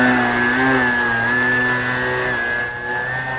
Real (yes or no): yes